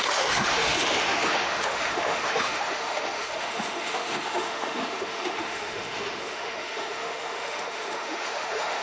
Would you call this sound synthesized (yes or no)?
yes